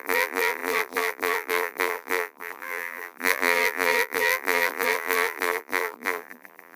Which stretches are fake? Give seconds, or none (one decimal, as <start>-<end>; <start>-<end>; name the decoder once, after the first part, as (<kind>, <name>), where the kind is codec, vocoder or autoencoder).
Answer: 0.0-6.8 (vocoder, BigVGAN v2)

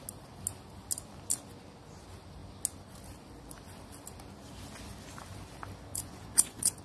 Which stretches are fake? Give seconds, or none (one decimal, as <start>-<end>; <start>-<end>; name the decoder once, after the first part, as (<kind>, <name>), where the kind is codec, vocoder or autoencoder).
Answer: 5.9-6.8 (vocoder, Vocos)

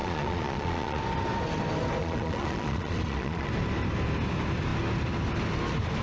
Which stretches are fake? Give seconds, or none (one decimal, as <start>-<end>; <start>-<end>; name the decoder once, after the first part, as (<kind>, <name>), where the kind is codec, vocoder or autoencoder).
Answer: 0.0-1.0 (vocoder, Vocos); 2.0-3.5

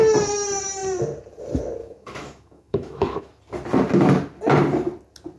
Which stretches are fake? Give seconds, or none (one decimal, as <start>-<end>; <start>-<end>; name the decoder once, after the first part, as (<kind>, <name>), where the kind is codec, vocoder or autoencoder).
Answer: 1.8-3.3 (autoencoder, DAC-VAE)

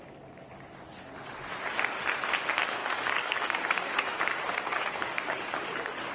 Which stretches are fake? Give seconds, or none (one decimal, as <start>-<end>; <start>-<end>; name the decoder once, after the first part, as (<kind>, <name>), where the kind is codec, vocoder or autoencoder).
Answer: 2.8-5.6 (codec, DAC)

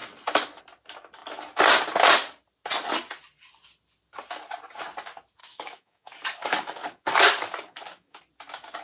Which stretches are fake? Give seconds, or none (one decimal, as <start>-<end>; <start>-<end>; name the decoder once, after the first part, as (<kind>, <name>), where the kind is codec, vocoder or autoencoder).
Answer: 5.4-8.2 (codec, DAC)

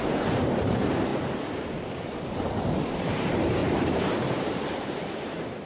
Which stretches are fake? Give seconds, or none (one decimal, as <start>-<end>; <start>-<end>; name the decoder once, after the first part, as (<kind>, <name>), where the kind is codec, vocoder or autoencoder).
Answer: 0.0-1.1 (vocoder, BigVGAN v2); 3.0-3.6; 4.4-5.7

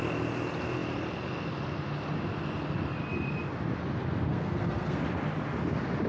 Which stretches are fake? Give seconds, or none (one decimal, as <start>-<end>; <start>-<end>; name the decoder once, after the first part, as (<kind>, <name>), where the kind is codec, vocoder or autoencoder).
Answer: 4.3-5.0 (codec, SNAC)